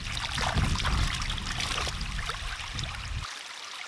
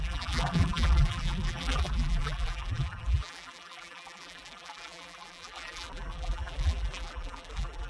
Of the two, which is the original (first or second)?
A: first